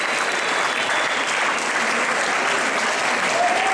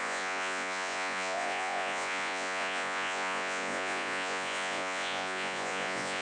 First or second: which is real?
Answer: first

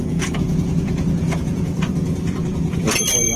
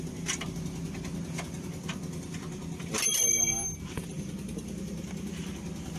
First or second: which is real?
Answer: second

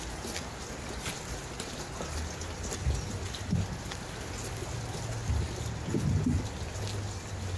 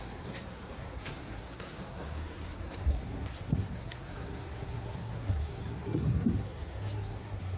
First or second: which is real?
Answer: first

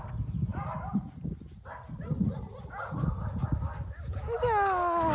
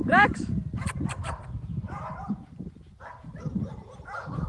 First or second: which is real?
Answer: first